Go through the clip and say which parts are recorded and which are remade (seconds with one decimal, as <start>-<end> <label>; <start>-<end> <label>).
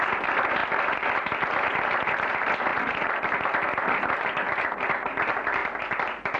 0.0-2.7 recorded; 2.7-3.5 remade; 3.5-6.4 recorded